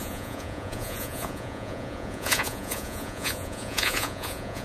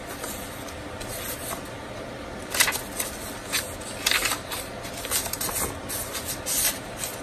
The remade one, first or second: first